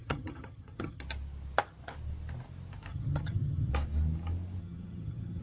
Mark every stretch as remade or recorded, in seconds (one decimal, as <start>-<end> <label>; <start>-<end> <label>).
0.0-1.0 remade; 1.0-2.9 recorded; 2.9-3.7 remade; 3.7-4.6 recorded; 4.6-5.4 remade